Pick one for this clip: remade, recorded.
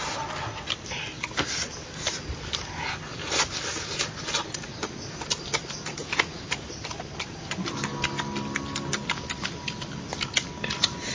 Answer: recorded